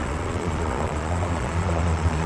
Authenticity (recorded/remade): remade